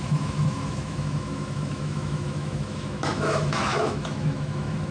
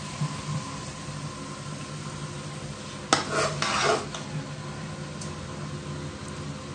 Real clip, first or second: second